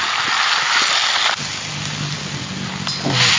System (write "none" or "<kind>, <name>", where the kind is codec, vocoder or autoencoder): none